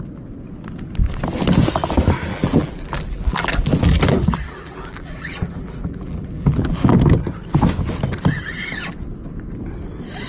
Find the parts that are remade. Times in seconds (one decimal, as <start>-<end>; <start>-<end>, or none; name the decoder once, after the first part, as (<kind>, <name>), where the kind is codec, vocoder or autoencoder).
2.3-6.9 (vocoder, BigVGAN v2)